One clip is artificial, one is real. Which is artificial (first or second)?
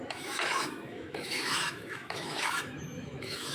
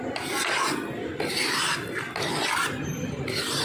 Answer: first